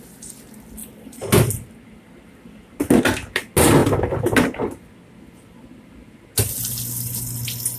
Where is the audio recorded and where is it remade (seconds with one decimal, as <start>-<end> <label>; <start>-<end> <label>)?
0.0-7.8 recorded